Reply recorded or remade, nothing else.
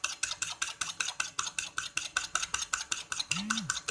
recorded